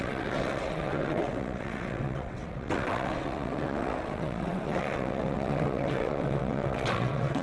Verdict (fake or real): fake